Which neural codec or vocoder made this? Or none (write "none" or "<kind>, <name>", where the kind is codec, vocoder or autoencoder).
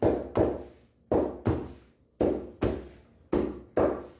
none